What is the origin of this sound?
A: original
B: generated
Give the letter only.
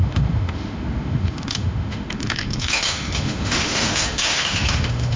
B